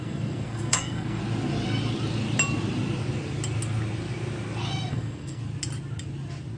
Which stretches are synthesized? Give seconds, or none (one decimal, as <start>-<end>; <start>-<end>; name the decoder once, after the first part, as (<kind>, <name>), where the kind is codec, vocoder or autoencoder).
0.0-1.2 (codec, SNAC); 4.9-5.4